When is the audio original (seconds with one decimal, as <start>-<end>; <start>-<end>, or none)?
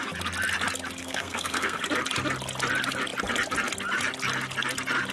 0.0-1.0; 1.8-5.1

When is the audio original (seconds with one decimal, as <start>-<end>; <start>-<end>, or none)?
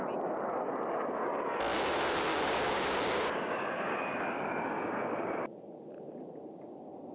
0.0-2.3; 3.9-7.1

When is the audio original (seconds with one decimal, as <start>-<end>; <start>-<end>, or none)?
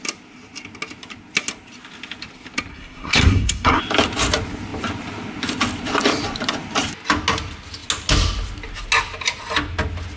0.0-2.7; 3.8-10.2